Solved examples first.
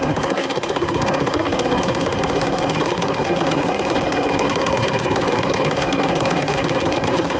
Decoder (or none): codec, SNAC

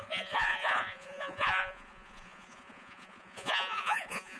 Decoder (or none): vocoder, Vocos